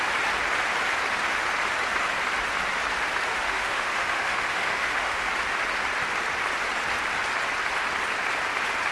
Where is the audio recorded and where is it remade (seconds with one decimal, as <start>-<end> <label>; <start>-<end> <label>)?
0.0-3.3 recorded; 3.3-5.3 remade; 5.3-8.9 recorded